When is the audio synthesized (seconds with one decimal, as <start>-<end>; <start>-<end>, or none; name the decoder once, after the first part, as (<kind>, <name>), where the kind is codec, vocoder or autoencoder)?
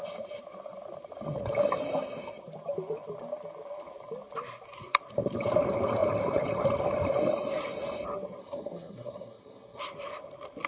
8.4-9.8 (codec, SNAC)